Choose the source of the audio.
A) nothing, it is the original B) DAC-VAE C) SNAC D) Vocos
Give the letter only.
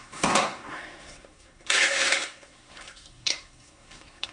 C